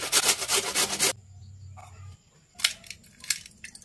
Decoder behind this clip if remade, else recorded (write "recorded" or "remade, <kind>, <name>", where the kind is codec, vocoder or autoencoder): recorded